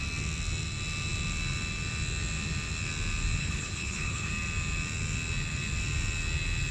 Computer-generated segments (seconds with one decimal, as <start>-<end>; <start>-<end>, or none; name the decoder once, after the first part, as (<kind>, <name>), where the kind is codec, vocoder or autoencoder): 3.4-4.3 (codec, HILCodec)